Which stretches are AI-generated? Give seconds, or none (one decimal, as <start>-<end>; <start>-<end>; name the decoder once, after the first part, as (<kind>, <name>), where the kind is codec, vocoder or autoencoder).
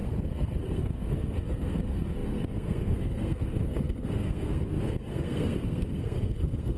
0.0-6.8 (codec, SNAC)